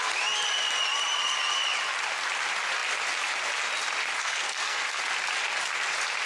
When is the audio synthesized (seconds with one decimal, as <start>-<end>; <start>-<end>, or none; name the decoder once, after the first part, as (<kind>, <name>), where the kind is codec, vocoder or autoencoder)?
4.2-5.0 (codec, SNAC)